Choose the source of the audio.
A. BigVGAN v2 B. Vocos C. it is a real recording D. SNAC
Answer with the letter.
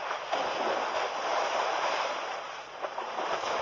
C